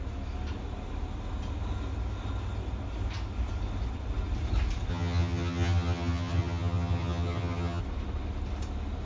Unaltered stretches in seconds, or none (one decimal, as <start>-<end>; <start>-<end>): 0.0-4.9; 7.8-9.1